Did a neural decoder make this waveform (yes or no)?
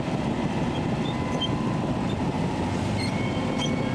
yes